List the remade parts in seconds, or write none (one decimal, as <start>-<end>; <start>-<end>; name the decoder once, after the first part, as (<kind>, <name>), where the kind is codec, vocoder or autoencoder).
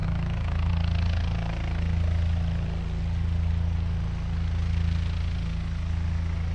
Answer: 0.0-0.7 (autoencoder, DAC-VAE)